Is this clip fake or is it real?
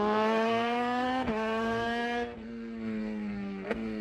fake